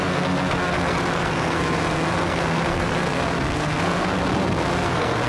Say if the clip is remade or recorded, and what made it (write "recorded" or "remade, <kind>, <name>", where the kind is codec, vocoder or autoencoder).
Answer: remade, codec, SNAC